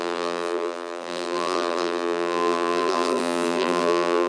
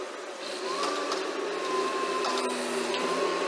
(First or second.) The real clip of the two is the second